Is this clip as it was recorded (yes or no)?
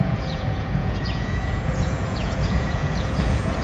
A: no